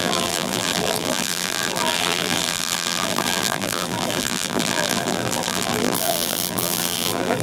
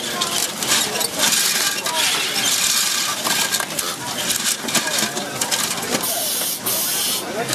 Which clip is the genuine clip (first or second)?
second